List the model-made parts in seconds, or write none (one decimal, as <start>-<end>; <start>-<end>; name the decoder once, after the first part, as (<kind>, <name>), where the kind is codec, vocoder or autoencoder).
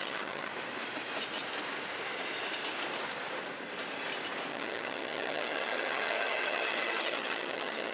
0.0-0.5 (vocoder, HiFi-GAN); 4.5-7.9